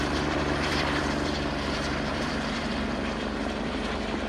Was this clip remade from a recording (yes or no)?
yes